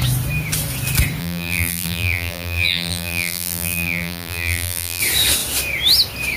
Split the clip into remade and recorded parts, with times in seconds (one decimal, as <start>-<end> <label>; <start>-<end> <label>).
0.0-1.2 recorded; 1.2-5.0 remade; 5.0-6.4 recorded